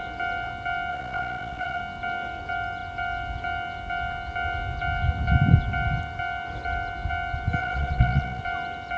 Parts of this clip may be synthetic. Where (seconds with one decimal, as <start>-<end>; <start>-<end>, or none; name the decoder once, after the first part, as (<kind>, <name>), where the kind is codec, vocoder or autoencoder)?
0.9-1.8 (vocoder, Vocos); 7.6-8.4